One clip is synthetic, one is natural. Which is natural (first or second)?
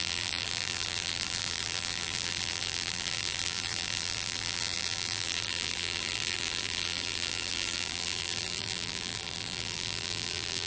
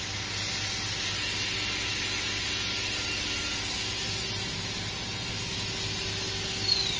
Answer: second